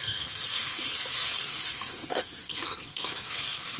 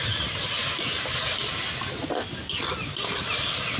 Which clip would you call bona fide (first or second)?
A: second